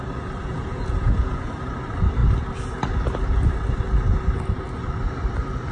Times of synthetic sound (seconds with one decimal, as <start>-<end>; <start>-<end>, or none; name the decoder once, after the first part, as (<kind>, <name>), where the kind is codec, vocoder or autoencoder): 0.4-1.5 (vocoder, Vocos)